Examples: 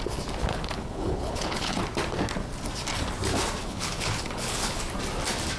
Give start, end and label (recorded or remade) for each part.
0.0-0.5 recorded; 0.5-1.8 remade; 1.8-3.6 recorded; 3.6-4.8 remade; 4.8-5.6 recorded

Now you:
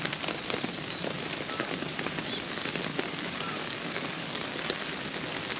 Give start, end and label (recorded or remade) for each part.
0.0-2.9 recorded; 2.9-4.6 remade; 4.6-5.6 recorded

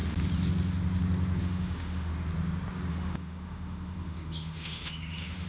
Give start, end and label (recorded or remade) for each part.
0.0-1.4 recorded; 1.4-2.1 remade; 2.1-2.9 recorded; 2.9-5.5 remade